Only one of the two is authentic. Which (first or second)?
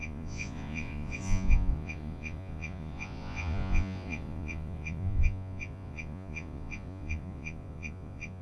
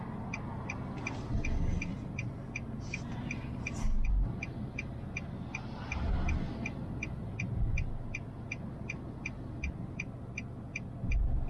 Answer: second